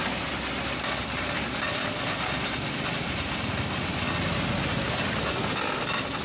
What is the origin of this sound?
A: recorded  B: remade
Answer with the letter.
A